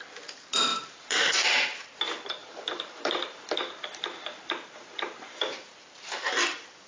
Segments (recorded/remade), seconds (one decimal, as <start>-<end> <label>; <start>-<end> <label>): 0.0-0.7 recorded; 0.7-1.3 remade; 1.3-2.4 recorded; 2.4-6.4 remade; 6.4-6.9 recorded